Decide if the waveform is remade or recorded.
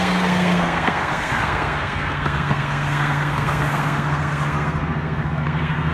remade